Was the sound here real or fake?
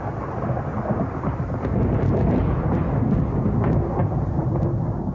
real